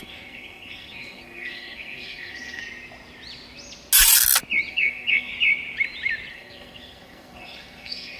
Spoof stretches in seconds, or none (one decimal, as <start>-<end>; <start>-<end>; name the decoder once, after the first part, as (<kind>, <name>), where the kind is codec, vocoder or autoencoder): 0.0-2.6 (codec, SNAC); 4.7-5.3; 6.3-8.2